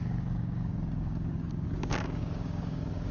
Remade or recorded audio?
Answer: remade